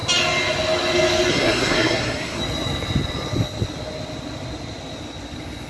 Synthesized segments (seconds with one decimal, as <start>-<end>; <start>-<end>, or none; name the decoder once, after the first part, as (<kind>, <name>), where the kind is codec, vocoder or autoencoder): 1.3-2.4 (codec, SNAC)

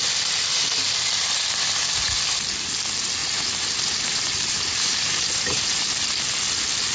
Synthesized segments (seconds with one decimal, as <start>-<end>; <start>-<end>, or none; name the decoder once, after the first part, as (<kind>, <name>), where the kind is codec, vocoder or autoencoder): 3.2-5.8 (vocoder, BigVGAN v2)

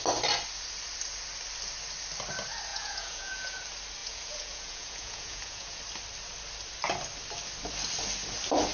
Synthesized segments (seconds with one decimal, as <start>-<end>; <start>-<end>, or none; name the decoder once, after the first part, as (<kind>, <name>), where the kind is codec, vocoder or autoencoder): 2.7-3.6 (vocoder, Vocos); 4.0-5.8